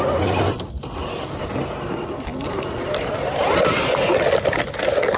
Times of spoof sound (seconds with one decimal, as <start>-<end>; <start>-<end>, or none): none